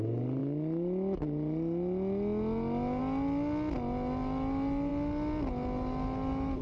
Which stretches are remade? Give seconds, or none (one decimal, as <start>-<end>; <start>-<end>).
none